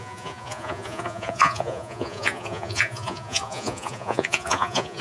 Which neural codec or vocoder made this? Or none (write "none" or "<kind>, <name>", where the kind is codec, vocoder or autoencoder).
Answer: vocoder, Vocos